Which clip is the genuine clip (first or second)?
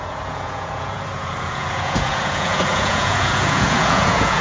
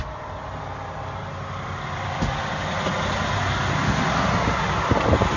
second